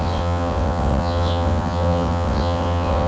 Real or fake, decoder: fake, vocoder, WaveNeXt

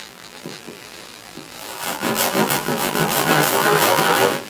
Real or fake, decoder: fake, vocoder, BigVGAN v2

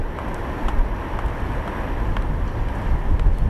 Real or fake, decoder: real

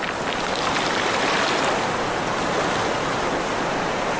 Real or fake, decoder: real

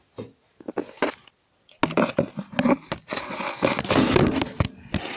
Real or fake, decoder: real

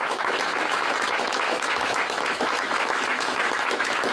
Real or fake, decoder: fake, autoencoder, DAC-VAE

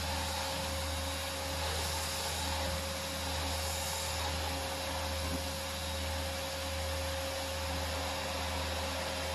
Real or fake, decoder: real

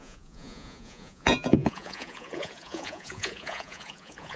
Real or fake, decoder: fake, vocoder, Vocos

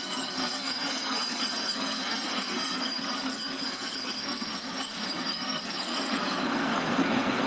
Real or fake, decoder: fake, codec, SNAC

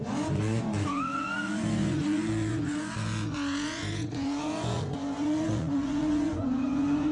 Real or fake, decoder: fake, vocoder, Vocos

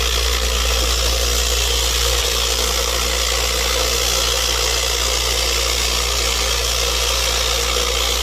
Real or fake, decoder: real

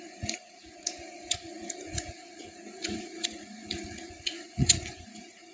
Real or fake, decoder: fake, vocoder, Vocos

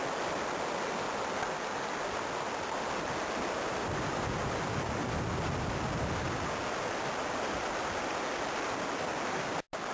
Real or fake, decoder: real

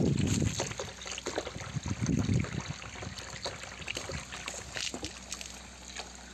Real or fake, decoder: real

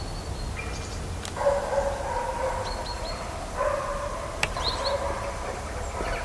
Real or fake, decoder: real